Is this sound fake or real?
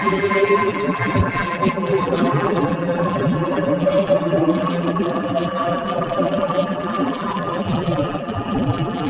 fake